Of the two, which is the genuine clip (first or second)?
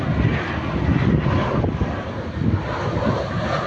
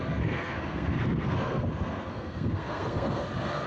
first